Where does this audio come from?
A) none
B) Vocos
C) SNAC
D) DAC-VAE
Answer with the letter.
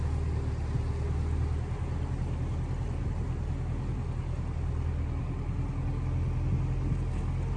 A